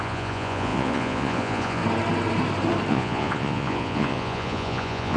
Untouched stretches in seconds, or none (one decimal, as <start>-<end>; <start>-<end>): 1.8-2.9